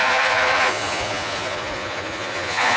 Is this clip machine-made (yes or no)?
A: yes